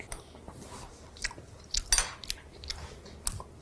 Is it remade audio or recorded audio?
recorded